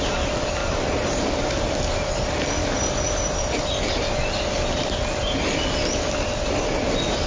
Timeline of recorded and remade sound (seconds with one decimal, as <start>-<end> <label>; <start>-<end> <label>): 0.0-0.6 recorded; 0.6-1.2 remade; 1.2-7.3 recorded